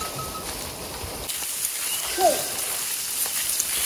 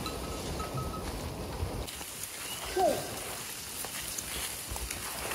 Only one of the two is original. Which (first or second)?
second